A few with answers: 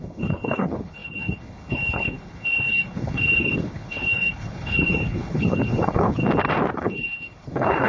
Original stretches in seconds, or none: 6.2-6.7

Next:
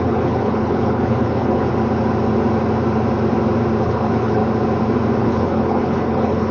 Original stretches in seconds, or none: 1.7-3.8; 4.4-5.2

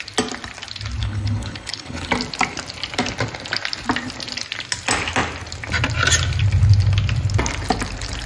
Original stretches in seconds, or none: 0.0-1.0; 2.1-8.3

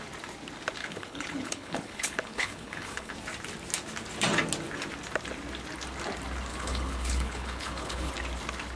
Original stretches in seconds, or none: 0.0-0.8; 3.1-6.5; 8.1-8.8

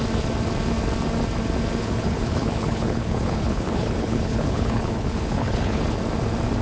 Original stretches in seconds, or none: 0.0-1.8; 5.8-6.6

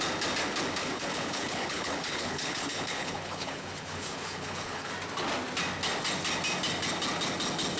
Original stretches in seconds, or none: 0.0-0.8; 4.9-7.8

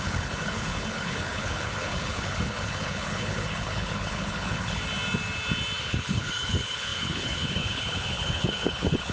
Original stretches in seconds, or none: 4.8-5.8